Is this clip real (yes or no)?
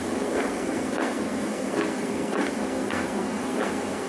no